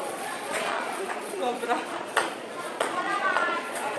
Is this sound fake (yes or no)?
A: yes